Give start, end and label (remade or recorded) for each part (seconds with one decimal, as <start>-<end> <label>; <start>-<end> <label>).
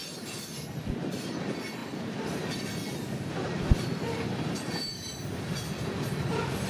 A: 0.0-6.7 recorded